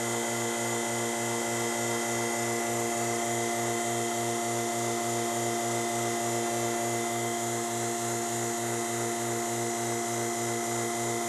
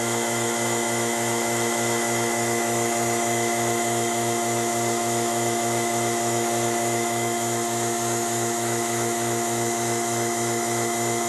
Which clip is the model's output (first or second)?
second